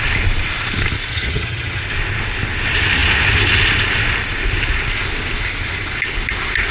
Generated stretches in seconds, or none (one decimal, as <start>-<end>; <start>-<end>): 1.1-1.8